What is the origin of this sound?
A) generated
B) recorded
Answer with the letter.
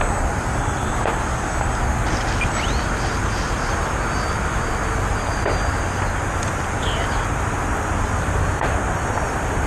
B